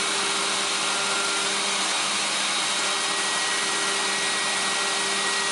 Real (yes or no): yes